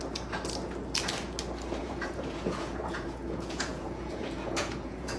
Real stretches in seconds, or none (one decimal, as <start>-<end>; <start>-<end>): 0.0-1.8